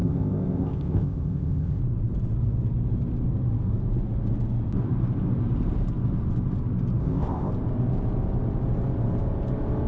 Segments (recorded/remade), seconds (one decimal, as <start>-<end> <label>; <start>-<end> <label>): 0.0-1.8 remade; 1.8-7.0 recorded; 7.0-7.5 remade; 7.5-9.9 recorded